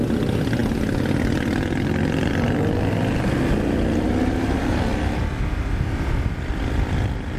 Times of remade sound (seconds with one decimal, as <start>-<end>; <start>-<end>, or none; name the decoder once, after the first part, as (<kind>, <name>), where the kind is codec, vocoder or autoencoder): none